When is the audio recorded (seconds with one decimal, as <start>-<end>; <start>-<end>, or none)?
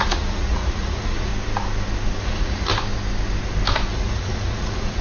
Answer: 1.3-2.2; 2.7-3.9